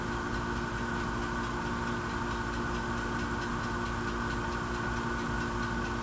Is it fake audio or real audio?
real